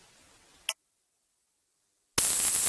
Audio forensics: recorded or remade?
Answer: recorded